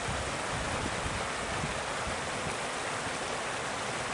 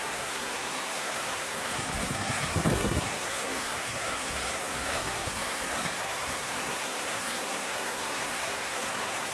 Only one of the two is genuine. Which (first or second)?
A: first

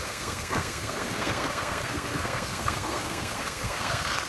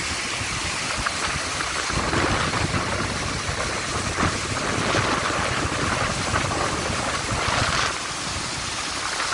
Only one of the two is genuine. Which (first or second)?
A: second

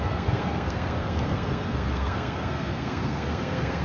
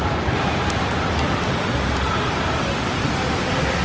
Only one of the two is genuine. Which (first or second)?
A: second